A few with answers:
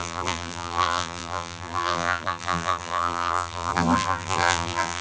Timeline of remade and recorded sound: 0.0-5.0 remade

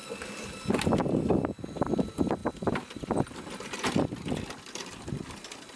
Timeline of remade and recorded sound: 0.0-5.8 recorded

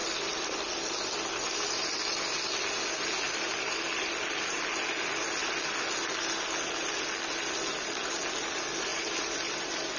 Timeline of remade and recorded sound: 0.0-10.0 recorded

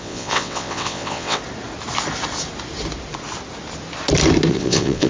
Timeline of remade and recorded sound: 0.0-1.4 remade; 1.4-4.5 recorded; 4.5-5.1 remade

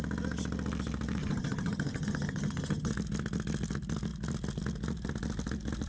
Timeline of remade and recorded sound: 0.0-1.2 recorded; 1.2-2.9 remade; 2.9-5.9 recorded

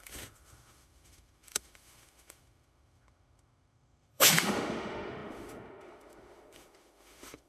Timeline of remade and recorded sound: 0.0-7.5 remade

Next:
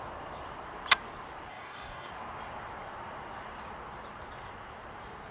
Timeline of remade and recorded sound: 0.0-1.5 recorded; 1.5-2.1 remade; 2.1-5.3 recorded

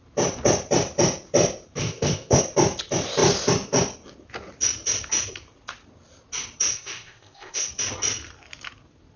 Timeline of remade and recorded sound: 0.0-1.8 recorded; 1.8-2.4 remade; 2.4-6.7 recorded; 6.7-7.7 remade; 7.7-9.2 recorded